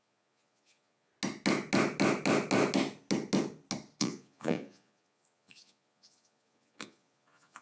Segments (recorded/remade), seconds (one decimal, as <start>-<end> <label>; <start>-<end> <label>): 0.0-1.1 remade; 1.1-4.0 recorded; 4.0-7.6 remade